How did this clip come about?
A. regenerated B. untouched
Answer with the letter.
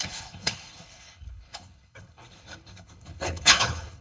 A